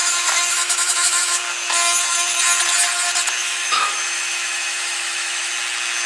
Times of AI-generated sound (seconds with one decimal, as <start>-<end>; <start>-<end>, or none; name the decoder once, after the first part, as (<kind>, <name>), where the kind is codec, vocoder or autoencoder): 0.0-1.4 (autoencoder, DAC-VAE); 3.4-5.5